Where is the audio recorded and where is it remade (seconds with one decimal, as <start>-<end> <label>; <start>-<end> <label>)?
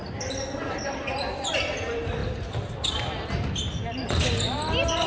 0.0-5.1 recorded